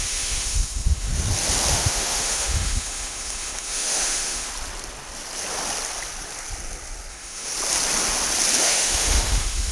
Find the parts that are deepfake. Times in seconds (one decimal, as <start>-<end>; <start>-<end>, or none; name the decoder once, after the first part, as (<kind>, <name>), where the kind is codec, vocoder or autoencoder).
0.0-1.1 (autoencoder, DAC-VAE); 1.7-4.5; 7.1-7.5; 8.6-9.7